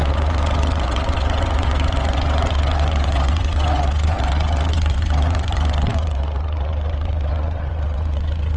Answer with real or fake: fake